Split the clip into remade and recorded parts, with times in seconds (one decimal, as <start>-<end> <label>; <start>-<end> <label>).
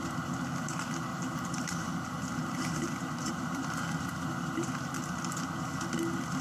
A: 0.0-1.1 recorded; 1.1-4.9 remade; 4.9-6.4 recorded